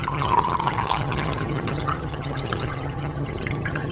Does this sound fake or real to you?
fake